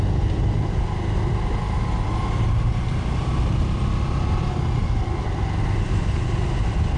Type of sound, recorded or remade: recorded